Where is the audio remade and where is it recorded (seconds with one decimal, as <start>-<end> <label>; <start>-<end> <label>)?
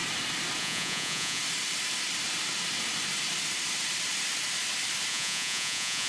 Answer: 0.0-0.6 recorded; 0.6-1.4 remade; 1.4-5.1 recorded; 5.1-6.1 remade